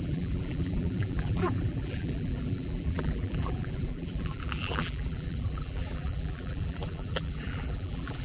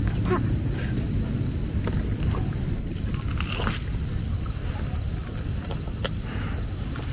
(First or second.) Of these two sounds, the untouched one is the second